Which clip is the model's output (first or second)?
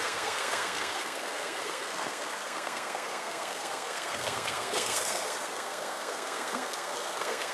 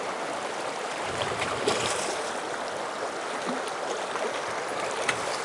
first